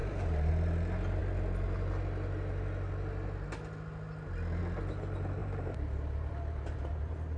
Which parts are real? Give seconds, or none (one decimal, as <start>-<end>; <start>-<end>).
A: 0.5-5.4